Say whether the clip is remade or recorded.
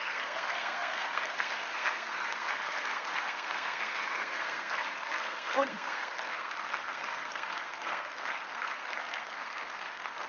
remade